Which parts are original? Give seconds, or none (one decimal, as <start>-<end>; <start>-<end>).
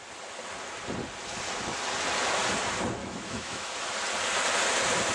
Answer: 0.0-3.0; 3.7-5.1